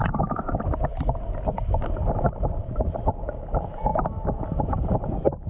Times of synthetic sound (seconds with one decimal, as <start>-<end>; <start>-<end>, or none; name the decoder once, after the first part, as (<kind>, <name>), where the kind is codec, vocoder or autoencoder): none